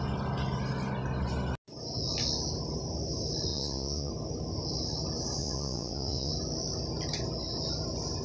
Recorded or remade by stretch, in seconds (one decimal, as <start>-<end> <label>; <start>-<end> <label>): 0.0-3.5 recorded; 3.5-4.1 remade; 4.1-5.4 recorded; 5.4-6.3 remade; 6.3-8.2 recorded